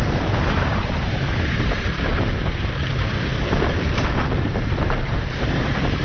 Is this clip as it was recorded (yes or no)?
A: no